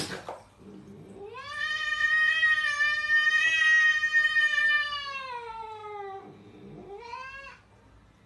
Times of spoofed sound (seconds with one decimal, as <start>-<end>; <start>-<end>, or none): none